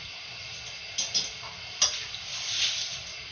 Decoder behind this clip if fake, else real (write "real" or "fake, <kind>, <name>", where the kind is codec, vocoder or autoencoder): real